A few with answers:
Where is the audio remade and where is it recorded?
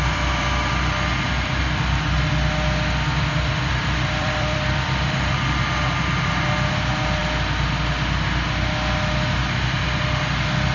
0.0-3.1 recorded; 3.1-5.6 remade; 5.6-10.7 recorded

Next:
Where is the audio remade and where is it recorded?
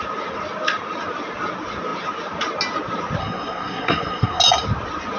0.0-3.2 recorded; 3.2-4.4 remade; 4.4-5.2 recorded